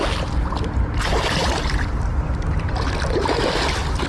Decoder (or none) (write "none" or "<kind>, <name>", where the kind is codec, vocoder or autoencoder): none